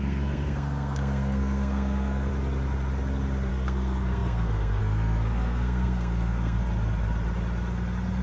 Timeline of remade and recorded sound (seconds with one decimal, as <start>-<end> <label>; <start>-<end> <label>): 0.0-2.3 remade; 2.3-3.5 recorded; 3.5-6.6 remade; 6.6-8.2 recorded